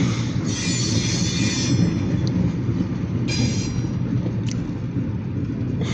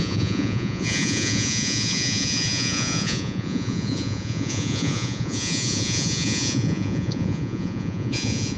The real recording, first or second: first